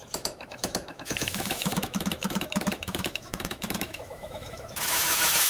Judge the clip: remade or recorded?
remade